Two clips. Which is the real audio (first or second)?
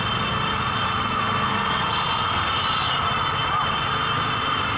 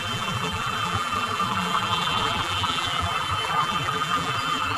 first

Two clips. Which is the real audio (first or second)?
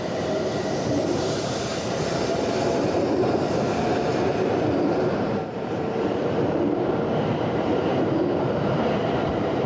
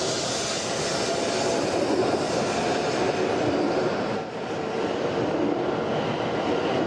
second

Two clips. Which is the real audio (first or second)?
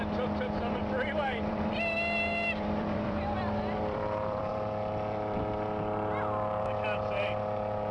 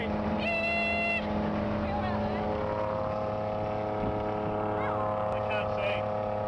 second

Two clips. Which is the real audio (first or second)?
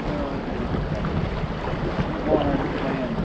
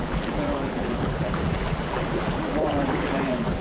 first